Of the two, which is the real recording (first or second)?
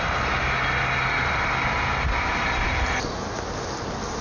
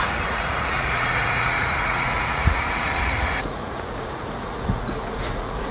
first